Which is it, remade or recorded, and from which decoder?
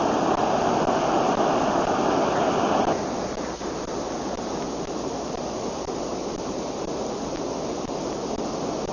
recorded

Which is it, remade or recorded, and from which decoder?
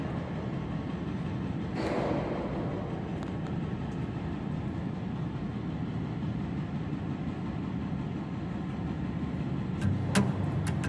recorded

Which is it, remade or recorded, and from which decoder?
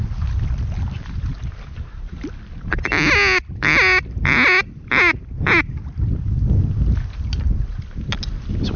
recorded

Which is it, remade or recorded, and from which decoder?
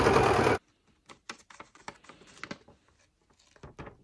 recorded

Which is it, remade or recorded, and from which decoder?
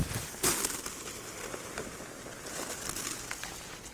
recorded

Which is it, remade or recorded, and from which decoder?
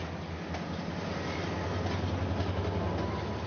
recorded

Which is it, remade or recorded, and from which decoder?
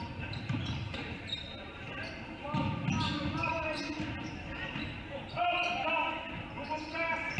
recorded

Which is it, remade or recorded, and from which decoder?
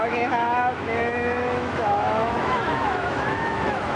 remade, autoencoder, DAC-VAE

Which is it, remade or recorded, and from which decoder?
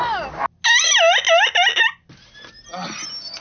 recorded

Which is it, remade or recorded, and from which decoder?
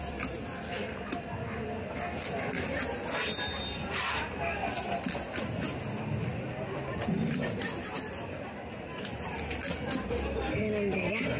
recorded